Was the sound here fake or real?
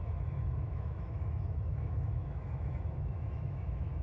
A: fake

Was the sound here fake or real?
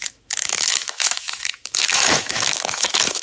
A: fake